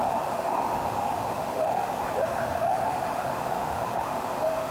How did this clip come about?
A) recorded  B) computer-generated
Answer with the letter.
B